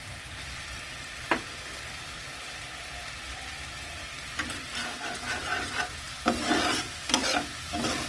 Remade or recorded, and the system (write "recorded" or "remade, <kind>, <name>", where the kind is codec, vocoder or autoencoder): recorded